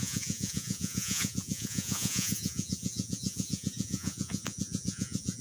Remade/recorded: remade